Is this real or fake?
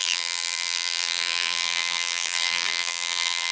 fake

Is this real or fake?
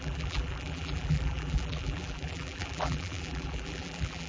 fake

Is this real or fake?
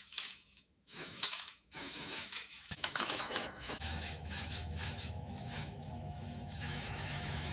fake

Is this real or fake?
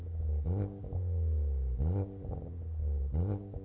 real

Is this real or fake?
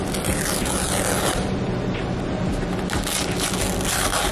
real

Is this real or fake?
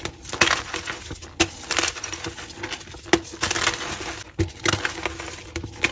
real